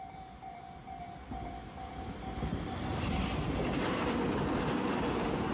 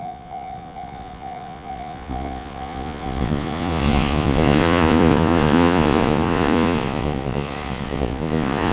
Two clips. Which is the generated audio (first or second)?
second